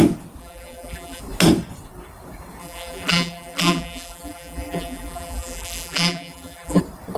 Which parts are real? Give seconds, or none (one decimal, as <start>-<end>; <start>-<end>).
0.0-0.4; 1.2-2.6; 6.8-7.2